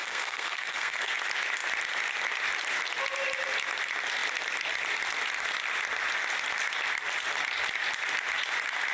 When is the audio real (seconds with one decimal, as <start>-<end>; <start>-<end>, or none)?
1.1-8.9